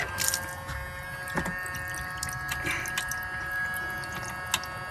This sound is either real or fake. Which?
real